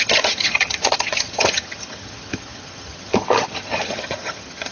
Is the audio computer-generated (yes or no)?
yes